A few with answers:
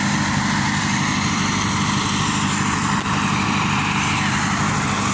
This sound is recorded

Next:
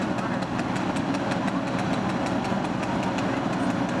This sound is recorded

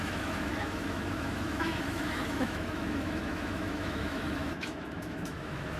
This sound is remade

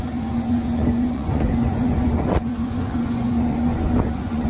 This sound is remade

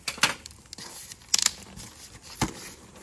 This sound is recorded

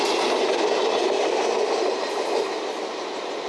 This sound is recorded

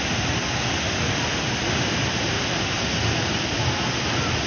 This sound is recorded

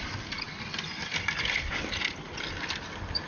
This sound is recorded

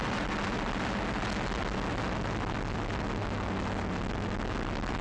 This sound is recorded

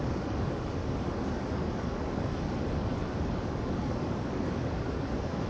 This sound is remade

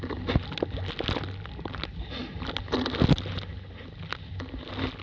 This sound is recorded